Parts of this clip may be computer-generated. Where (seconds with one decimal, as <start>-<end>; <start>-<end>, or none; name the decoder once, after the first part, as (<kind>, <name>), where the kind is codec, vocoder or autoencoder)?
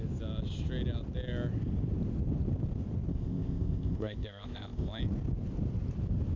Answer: 3.1-5.0 (codec, ZipCodec)